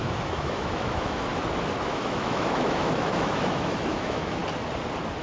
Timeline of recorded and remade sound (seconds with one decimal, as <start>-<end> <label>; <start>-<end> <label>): 0.0-1.3 remade; 1.3-1.8 recorded; 1.8-4.4 remade; 4.4-5.2 recorded